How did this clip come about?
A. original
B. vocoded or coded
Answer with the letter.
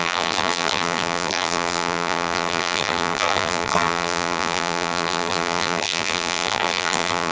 B